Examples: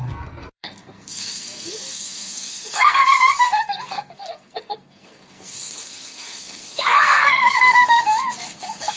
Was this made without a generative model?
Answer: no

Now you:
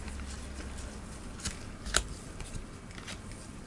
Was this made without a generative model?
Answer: yes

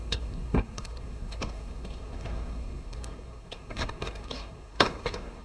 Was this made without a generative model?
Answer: no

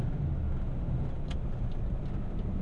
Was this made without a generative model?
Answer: yes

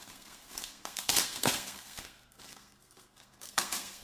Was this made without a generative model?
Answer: no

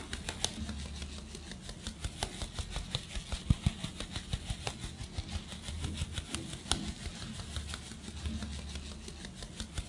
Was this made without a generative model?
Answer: yes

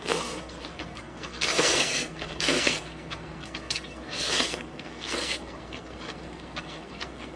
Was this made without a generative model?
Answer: no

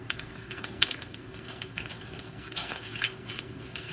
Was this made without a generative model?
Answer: no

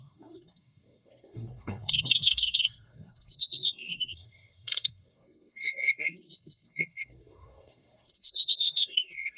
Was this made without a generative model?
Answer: no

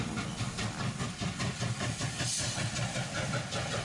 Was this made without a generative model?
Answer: yes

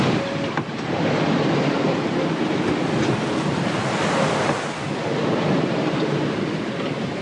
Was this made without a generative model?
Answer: yes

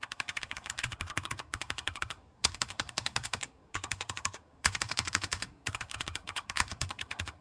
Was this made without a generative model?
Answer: no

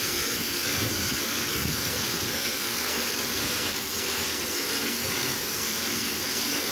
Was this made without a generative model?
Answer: no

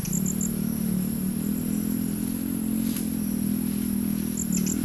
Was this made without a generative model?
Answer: yes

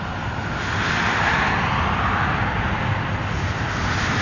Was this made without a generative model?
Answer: yes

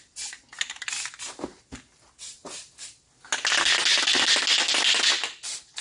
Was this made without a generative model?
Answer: yes